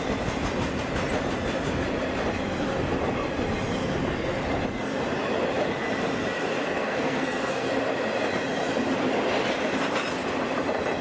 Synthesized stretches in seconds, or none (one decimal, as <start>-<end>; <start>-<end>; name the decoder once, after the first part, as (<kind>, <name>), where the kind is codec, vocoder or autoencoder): 6.6-7.7 (codec, SNAC)